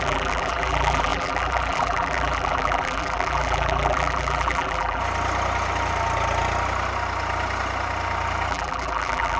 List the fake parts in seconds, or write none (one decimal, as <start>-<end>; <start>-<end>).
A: 0.0-5.0; 8.5-9.4